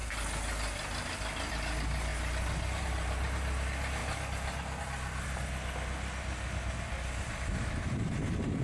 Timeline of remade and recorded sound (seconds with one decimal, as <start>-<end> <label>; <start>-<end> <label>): 0.0-8.6 recorded